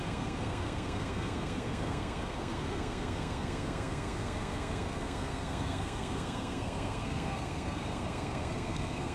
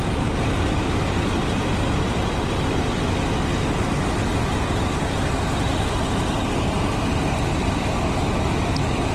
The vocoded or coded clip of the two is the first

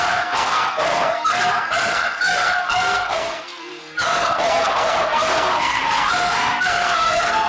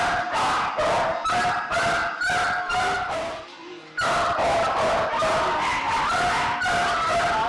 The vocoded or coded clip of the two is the first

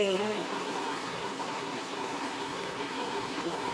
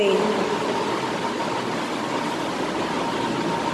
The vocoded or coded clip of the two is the first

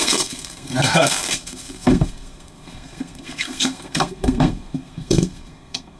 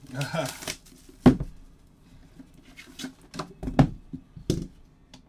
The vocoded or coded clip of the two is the first